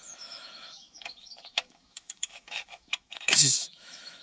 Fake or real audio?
fake